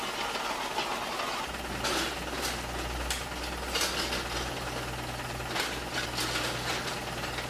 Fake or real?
real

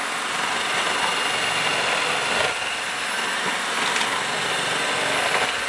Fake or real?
real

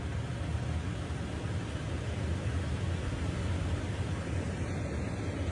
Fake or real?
real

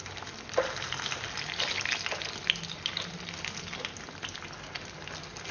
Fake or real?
real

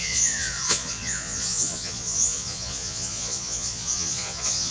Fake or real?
fake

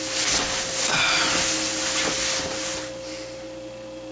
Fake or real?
real